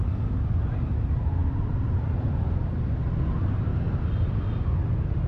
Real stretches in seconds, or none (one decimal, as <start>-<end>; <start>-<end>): 0.0-5.3